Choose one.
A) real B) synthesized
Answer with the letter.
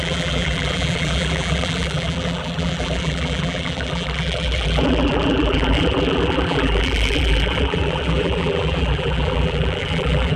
B